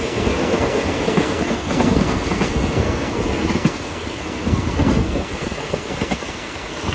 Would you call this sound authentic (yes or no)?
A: no